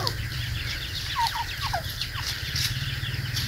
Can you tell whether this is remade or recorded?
remade